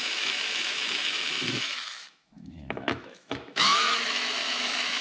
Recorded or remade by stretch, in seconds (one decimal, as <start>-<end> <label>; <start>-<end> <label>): 0.0-5.0 remade